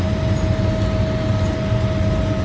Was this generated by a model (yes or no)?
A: no